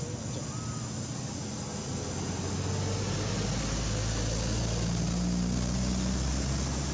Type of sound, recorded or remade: recorded